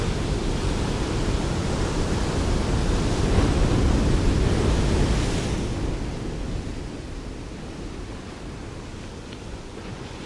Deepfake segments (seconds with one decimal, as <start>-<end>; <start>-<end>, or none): 9.2-10.3